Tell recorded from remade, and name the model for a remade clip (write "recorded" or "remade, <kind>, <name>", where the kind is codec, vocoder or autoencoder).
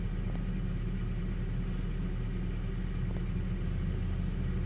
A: recorded